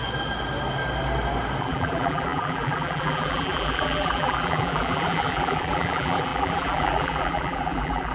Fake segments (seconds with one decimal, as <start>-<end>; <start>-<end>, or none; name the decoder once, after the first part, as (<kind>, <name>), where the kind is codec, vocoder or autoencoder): 1.6-8.1 (vocoder, BigVGAN v2)